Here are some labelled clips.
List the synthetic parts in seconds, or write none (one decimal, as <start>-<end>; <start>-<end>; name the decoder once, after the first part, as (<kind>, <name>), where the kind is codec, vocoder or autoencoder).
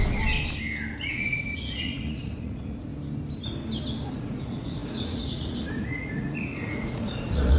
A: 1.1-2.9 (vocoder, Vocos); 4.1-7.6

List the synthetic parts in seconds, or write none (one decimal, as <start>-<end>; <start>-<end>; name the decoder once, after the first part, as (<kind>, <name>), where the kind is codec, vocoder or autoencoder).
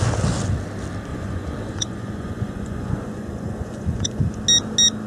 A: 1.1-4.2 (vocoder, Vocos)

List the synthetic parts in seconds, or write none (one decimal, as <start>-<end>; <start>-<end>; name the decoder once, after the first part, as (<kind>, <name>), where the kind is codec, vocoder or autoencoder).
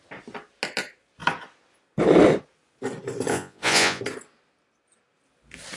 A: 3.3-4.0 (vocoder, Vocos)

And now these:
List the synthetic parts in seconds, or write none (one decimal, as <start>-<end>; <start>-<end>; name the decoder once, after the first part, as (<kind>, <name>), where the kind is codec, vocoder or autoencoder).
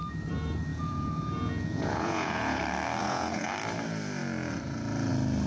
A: 0.7-2.6 (vocoder, Vocos); 3.0-3.5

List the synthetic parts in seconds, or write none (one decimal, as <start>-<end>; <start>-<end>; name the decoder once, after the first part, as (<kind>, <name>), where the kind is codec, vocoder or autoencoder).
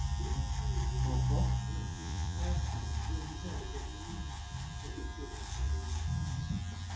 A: 1.9-2.4 (vocoder, Vocos)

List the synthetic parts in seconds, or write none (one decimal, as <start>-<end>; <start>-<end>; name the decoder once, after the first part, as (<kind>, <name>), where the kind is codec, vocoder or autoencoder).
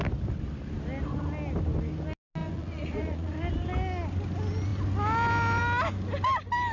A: 2.4-3.3 (vocoder, Vocos)